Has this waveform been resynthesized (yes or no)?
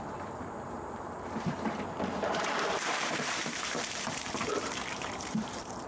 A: yes